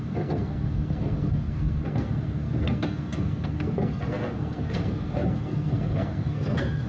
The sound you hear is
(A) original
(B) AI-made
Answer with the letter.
B